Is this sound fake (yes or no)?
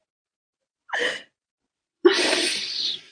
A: yes